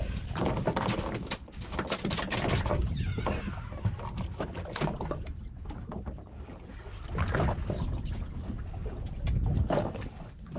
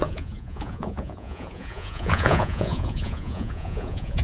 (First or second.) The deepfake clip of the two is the second